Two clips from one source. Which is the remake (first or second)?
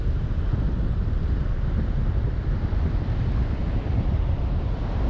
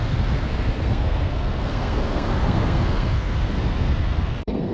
second